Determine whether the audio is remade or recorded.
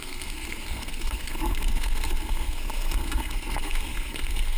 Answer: remade